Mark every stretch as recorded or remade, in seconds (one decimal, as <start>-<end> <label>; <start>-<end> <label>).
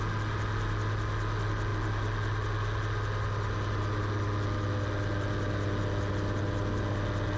0.0-7.4 recorded